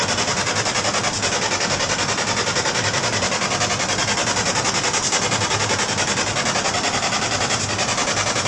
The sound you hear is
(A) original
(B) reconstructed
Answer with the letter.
A